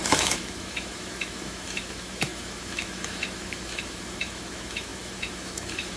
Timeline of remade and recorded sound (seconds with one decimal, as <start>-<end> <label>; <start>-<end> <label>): 0.0-6.0 remade